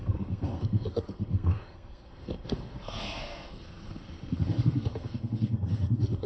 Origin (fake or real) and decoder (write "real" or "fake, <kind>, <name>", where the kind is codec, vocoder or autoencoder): fake, codec, SNAC